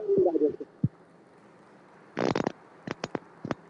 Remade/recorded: recorded